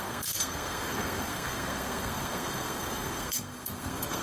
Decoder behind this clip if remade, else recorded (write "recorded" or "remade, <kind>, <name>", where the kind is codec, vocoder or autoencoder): remade, codec, SNAC